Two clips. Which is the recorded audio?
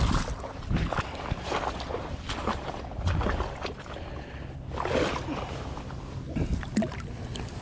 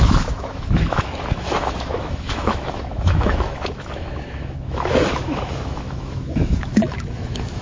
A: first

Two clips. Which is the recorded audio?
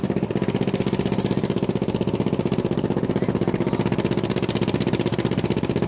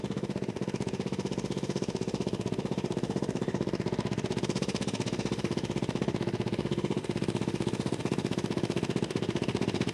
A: first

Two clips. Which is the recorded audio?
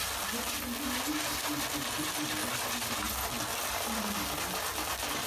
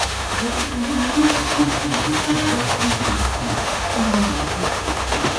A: first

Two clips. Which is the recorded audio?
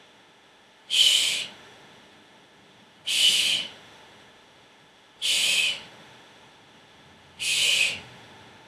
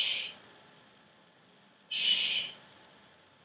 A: second